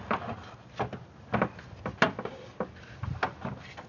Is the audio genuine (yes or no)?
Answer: yes